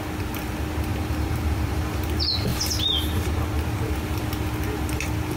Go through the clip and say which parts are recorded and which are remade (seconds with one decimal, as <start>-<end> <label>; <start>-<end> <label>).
0.0-0.9 recorded; 0.9-2.1 remade; 2.1-5.4 recorded